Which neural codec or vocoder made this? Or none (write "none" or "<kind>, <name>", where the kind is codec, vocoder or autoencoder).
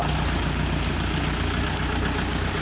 none